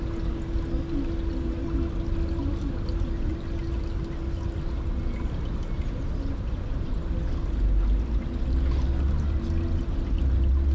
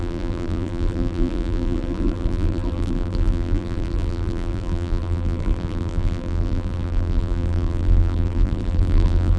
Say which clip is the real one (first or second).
first